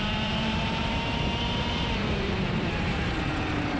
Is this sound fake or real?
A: fake